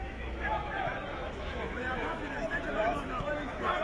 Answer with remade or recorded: remade